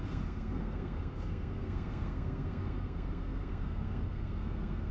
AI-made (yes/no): yes